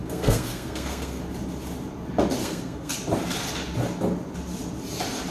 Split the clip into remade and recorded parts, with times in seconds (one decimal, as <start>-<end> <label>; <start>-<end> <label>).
0.0-1.2 remade; 1.2-2.4 recorded; 2.4-2.9 remade; 2.9-5.3 recorded